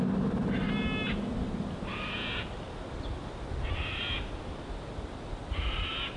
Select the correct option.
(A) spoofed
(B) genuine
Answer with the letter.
B